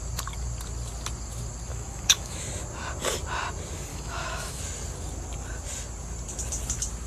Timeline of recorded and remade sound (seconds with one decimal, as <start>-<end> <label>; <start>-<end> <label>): 0.0-1.7 recorded; 1.7-2.5 remade; 2.5-3.9 recorded; 3.9-4.6 remade; 4.6-7.1 recorded